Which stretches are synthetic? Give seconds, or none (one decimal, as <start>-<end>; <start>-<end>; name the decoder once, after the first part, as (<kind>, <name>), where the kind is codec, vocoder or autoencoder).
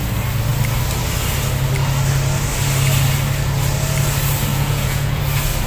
4.5-5.2 (vocoder, Vocos)